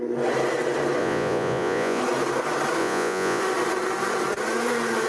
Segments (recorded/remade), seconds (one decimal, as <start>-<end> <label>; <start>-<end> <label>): 0.0-1.0 recorded; 1.0-2.0 remade; 2.0-2.8 recorded; 2.8-3.4 remade; 3.4-5.1 recorded